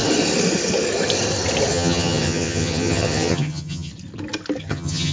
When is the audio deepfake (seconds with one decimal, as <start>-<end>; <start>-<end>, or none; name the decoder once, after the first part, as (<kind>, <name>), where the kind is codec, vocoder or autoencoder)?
1.7-3.9 (vocoder, HiFi-GAN); 4.6-5.1